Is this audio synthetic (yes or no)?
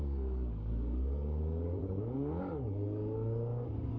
yes